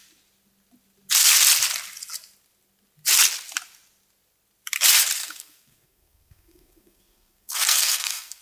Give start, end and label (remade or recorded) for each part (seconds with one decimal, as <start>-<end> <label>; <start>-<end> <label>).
0.0-5.2 recorded; 5.2-8.4 remade